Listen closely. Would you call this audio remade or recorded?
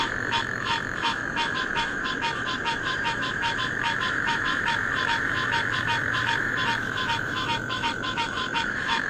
remade